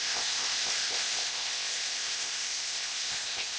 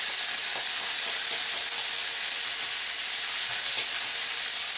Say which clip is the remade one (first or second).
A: first